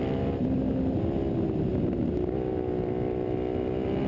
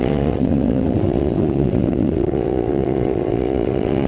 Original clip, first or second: first